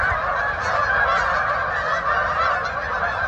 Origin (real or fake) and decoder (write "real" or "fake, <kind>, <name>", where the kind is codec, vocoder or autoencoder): real